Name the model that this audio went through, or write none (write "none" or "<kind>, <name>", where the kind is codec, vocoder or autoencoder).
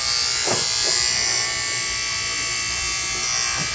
none